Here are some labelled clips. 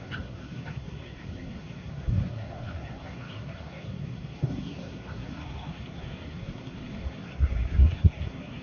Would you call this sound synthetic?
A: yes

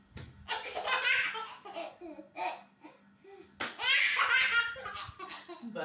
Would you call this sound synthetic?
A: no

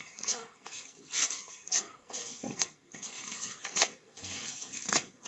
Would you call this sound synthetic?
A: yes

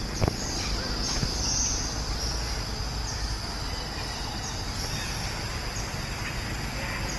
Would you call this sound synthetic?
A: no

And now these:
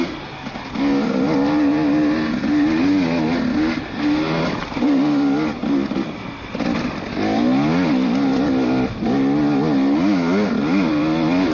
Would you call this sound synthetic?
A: no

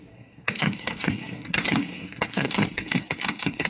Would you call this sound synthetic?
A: yes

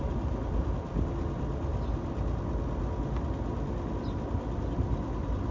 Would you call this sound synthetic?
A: no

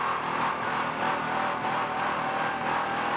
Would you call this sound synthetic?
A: no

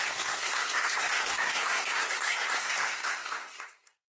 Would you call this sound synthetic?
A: yes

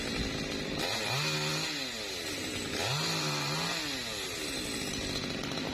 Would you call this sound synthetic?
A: no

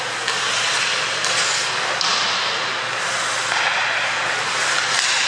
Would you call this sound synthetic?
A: no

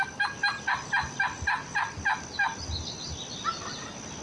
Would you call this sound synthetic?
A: no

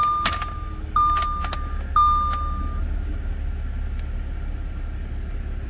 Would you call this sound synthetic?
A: no